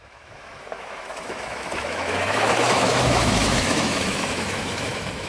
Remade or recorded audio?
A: remade